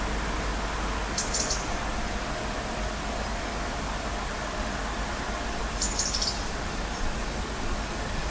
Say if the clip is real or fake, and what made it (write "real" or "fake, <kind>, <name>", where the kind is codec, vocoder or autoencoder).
real